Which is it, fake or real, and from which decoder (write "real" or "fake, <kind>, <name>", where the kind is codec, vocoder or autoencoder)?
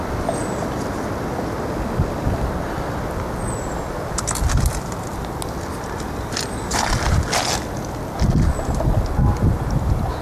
real